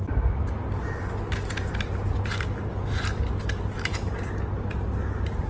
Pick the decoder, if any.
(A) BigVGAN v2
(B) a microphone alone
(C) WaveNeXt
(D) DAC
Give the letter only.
B